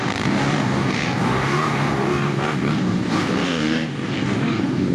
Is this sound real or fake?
fake